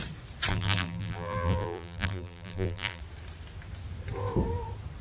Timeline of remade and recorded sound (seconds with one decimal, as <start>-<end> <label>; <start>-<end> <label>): 0.0-0.5 recorded; 0.5-3.0 remade; 3.0-5.0 recorded